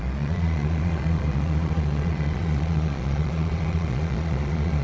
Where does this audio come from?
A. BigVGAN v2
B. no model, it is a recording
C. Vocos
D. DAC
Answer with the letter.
C